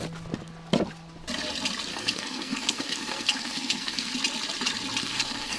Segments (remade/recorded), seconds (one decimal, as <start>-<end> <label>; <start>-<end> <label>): 0.0-1.9 recorded; 1.9-4.1 remade; 4.1-5.0 recorded; 5.0-5.6 remade